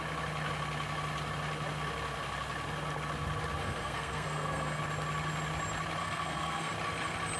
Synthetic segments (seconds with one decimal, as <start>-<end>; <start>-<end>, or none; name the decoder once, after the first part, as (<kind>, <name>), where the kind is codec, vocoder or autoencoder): 3.6-4.8 (codec, SNAC); 6.0-6.7